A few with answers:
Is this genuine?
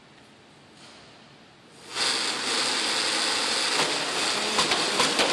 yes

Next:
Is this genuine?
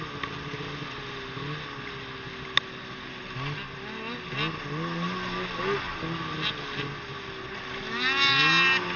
yes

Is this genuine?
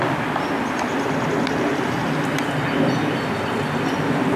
yes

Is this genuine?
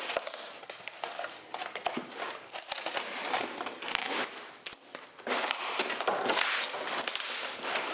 yes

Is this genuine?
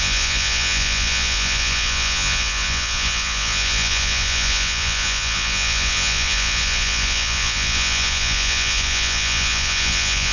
no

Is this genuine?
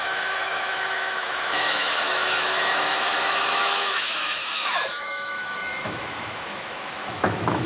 no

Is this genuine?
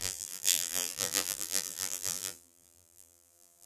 no